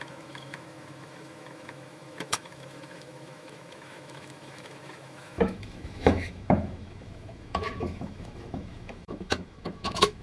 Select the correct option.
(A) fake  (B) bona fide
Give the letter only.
A